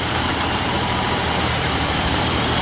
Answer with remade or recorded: remade